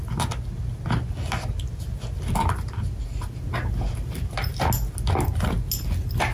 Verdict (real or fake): real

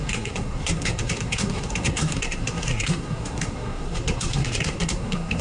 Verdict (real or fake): fake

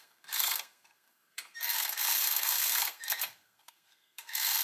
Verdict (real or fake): fake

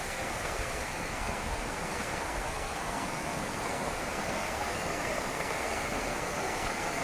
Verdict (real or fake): fake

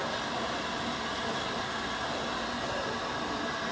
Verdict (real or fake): real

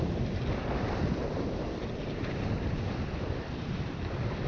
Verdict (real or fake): real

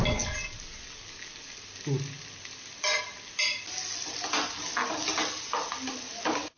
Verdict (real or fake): real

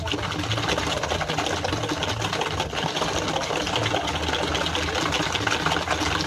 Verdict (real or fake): real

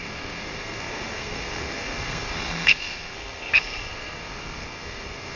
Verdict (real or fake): fake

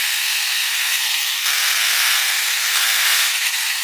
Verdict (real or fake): fake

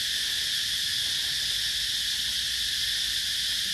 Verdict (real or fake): real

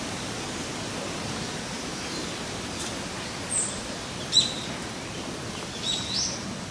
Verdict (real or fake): real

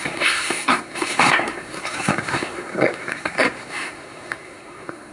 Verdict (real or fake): fake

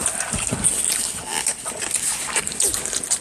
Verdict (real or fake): real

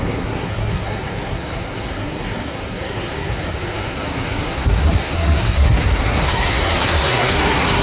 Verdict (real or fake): fake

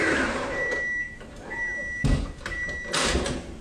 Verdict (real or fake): real